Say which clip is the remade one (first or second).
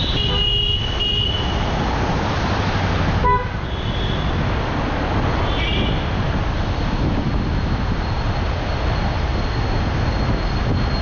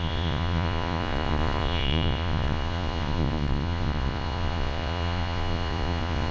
second